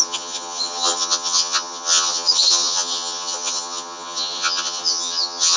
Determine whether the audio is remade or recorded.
remade